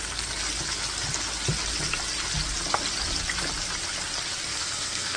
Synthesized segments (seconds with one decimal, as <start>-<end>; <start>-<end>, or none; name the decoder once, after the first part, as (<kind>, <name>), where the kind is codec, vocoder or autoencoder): 4.5-5.2 (codec, SNAC)